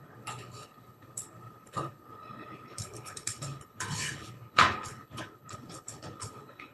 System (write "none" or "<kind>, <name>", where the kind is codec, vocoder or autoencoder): codec, HILCodec